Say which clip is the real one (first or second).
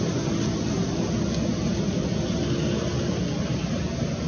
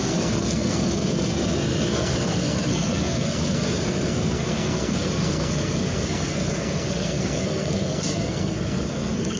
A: first